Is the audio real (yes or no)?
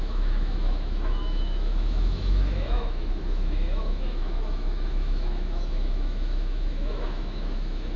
no